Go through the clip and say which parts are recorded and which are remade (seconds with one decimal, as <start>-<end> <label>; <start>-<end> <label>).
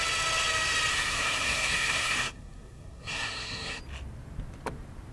0.0-0.9 recorded; 0.9-3.8 remade; 3.8-5.1 recorded